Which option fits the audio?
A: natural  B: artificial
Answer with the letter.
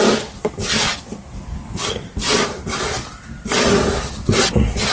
A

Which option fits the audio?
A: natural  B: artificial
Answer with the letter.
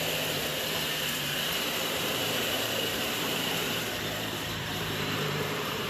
B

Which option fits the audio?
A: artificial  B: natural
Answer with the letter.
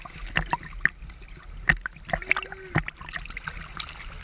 B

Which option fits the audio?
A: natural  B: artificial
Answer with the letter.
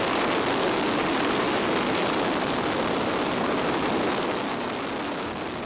A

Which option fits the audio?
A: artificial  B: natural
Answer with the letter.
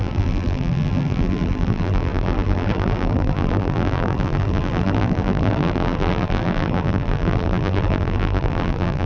A